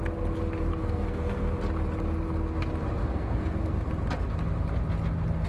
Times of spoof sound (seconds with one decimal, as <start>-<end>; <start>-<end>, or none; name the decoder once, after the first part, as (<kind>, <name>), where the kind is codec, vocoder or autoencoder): 0.7-1.5 (codec, SNAC); 3.0-3.9